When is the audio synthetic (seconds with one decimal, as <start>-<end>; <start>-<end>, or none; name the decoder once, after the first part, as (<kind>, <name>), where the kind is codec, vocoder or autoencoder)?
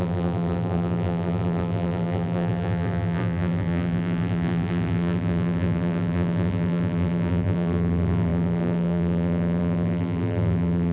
0.0-10.9 (vocoder, BigVGAN v2)